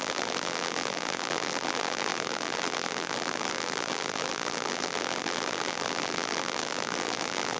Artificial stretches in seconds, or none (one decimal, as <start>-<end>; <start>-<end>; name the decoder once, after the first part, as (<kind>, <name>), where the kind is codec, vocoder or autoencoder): 0.0-7.6 (vocoder, BigVGAN v2)